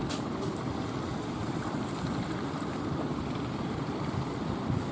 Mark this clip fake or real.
fake